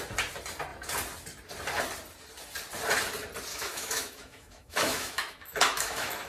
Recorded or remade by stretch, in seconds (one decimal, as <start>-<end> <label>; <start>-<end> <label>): 0.0-3.5 recorded; 3.5-6.3 remade